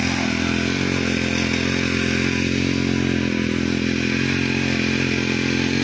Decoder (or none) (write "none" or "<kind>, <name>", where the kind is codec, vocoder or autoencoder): none